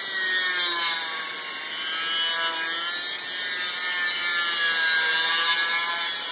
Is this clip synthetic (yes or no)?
no